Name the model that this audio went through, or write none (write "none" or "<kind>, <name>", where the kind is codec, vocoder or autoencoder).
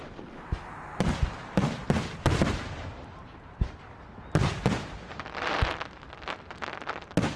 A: none